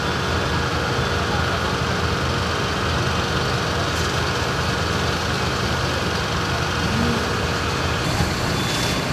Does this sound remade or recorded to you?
recorded